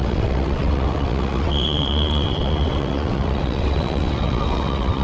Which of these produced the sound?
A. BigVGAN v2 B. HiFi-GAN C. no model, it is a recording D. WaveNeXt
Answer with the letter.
D